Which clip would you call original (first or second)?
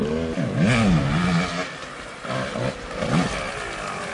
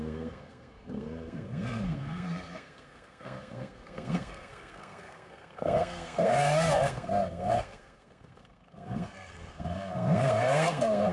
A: first